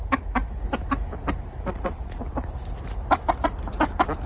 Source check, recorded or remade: recorded